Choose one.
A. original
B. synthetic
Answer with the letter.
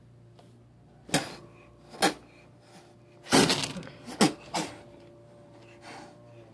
A